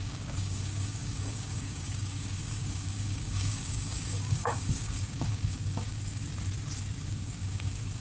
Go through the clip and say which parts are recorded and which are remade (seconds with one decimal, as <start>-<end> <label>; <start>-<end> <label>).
0.0-6.2 remade; 6.2-7.0 recorded; 7.0-8.0 remade